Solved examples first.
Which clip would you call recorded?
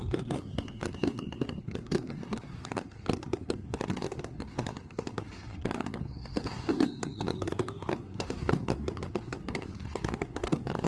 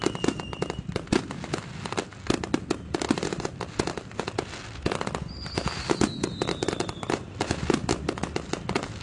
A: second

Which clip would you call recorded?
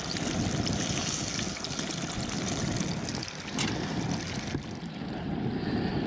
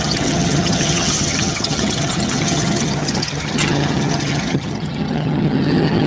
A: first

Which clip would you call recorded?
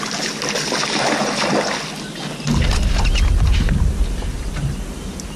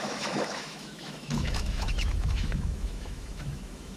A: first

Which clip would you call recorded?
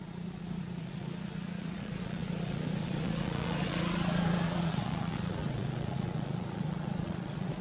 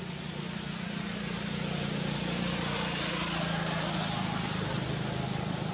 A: second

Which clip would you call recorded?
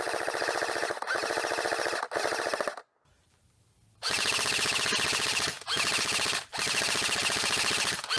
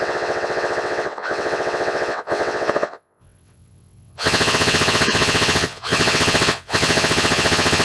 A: first